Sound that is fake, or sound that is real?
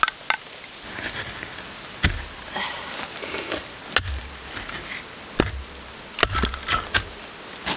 real